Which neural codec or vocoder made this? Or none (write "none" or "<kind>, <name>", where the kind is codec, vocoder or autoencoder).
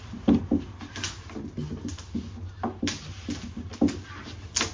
none